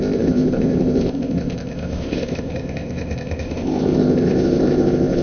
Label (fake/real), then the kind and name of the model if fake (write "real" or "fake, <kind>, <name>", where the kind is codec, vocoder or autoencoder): fake, codec, ZipCodec